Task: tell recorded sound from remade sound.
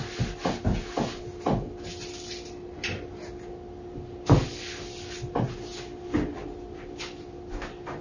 recorded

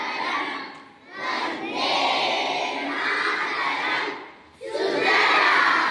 recorded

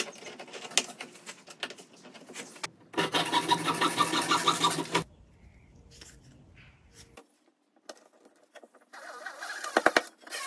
recorded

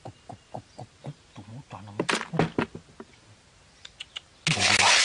recorded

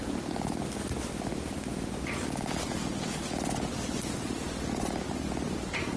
recorded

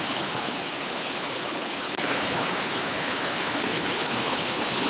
remade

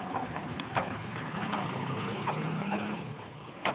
remade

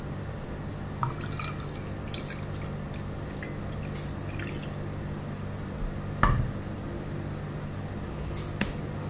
recorded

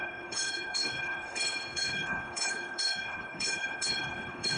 remade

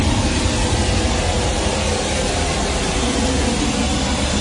recorded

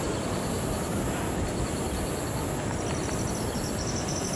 recorded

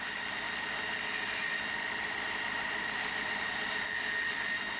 recorded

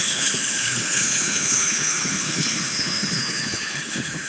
remade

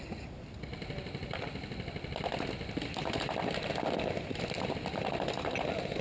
recorded